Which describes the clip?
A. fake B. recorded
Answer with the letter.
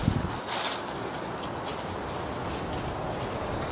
B